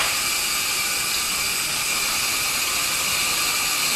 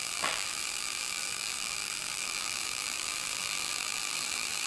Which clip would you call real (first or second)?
first